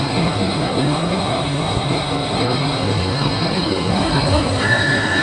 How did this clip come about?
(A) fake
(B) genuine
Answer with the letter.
A